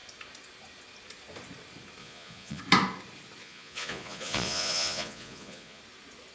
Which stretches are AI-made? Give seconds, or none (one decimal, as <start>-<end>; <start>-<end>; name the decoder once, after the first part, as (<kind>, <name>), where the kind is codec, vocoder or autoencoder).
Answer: 2.0-2.6 (vocoder, Vocos); 3.4-5.8